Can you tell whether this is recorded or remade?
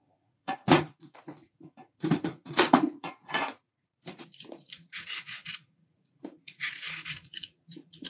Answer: remade